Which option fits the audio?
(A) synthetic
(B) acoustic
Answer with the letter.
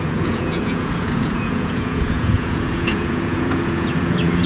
A